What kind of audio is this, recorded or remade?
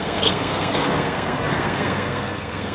remade